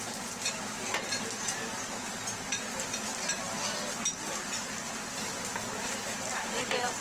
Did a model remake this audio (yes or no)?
no